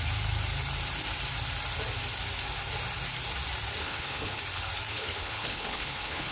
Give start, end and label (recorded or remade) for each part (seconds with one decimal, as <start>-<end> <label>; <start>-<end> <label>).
0.0-3.8 recorded; 3.8-4.4 remade; 4.4-4.9 recorded; 4.9-6.3 remade